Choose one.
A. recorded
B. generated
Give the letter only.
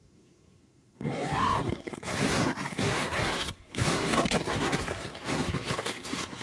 B